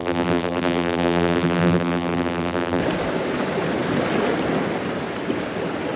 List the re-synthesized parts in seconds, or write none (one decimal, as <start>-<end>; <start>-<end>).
0.0-2.8